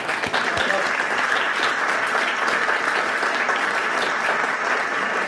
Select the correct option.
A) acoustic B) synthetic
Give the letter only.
A